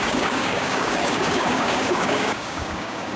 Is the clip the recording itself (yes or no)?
no